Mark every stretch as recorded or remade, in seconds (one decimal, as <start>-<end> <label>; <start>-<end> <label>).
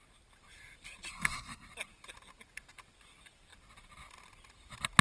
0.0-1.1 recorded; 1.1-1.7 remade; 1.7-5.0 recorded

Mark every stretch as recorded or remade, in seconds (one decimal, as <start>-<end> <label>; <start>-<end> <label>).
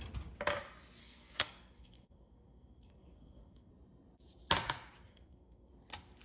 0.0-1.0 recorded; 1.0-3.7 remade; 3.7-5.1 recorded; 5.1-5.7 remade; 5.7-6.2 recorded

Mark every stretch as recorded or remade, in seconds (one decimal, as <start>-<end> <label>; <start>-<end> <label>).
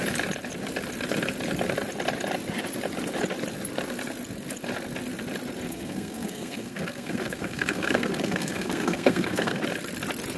0.0-5.7 recorded; 5.7-9.6 remade; 9.6-10.4 recorded